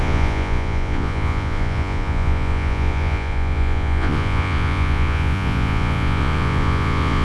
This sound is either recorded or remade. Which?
remade